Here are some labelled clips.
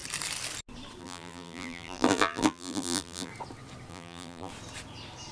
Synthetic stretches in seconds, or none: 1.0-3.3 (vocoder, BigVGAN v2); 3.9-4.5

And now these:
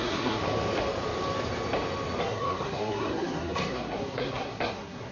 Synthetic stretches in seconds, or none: 0.0-0.4 (codec, SNAC); 2.2-5.1

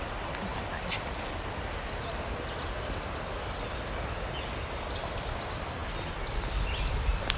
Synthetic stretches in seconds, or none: 0.0-0.5 (vocoder, BigVGAN v2); 4.9-5.8; 6.4-7.4

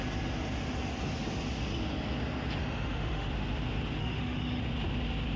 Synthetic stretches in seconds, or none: 2.6-3.3 (autoencoder, DAC-VAE); 4.0-4.6

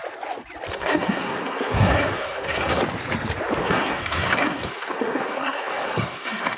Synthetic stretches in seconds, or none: 0.7-2.8 (codec, SNAC); 3.6-6.6

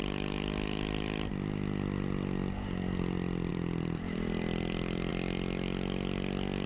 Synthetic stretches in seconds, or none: 3.5-5.1 (vocoder, BigVGAN v2)